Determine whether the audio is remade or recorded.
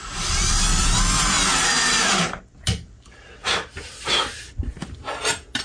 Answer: recorded